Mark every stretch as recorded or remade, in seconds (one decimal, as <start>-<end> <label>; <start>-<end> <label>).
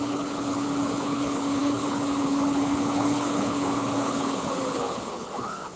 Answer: 0.0-5.8 remade